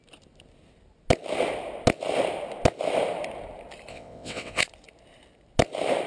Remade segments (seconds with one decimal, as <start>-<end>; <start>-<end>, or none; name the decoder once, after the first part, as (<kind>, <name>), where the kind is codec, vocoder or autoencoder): 3.9-4.6 (vocoder, WaveNeXt)